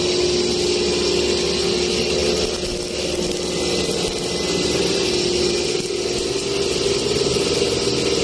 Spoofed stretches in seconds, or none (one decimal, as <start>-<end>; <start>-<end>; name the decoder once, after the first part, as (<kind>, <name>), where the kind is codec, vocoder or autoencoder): none